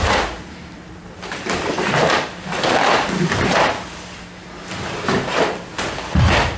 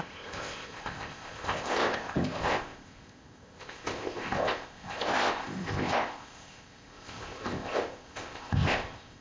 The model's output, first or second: second